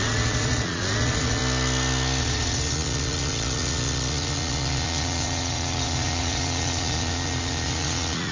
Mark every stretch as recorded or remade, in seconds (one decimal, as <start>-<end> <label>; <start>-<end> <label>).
0.0-1.4 remade; 1.4-2.2 recorded; 2.2-8.3 remade